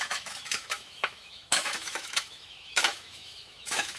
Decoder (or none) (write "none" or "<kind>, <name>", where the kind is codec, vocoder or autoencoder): autoencoder, DAC-VAE